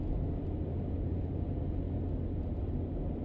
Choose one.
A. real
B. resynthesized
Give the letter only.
A